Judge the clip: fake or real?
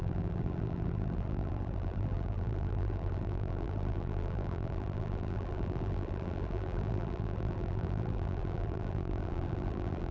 fake